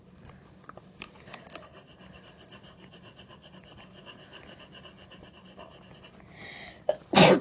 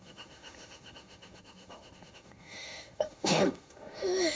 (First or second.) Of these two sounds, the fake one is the second